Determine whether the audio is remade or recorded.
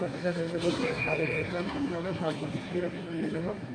remade